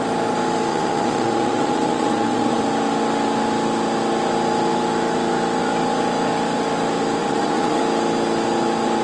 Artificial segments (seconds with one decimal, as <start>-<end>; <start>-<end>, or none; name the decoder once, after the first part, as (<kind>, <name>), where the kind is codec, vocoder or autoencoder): 0.7-2.6 (vocoder, Vocos); 7.2-7.8